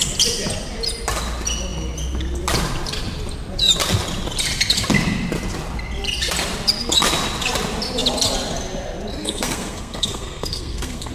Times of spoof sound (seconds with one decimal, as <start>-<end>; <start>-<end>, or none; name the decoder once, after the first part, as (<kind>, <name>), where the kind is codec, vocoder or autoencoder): 9.2-11.1 (codec, SNAC)